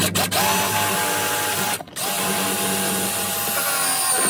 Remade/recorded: recorded